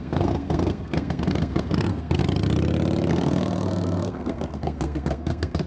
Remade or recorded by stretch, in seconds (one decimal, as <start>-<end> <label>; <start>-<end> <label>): 0.0-2.2 remade; 2.2-3.1 recorded; 3.1-5.7 remade